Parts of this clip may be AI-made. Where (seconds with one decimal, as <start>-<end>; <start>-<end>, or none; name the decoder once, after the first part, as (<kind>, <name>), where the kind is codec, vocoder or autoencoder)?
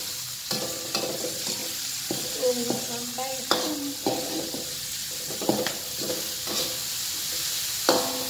none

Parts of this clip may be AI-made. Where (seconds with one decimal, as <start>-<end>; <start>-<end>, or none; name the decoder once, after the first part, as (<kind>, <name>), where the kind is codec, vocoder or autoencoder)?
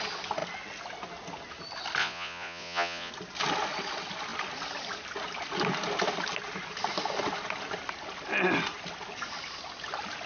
2.0-3.1 (vocoder, Vocos)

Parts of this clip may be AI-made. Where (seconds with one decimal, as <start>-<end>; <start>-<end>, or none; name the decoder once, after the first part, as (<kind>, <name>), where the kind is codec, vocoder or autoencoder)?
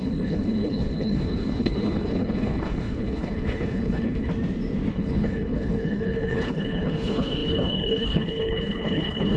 0.0-4.3 (codec, HILCodec); 4.9-9.4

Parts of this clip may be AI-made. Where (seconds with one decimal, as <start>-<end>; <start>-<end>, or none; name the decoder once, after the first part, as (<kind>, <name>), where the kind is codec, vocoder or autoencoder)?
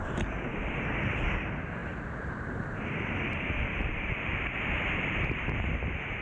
1.8-4.8 (vocoder, BigVGAN v2)